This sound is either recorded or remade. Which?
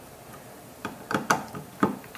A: remade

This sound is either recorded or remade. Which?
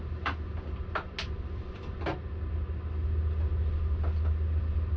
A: recorded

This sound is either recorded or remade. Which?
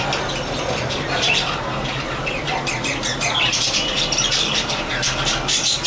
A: remade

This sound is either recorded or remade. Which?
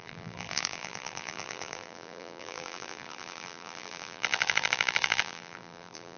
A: remade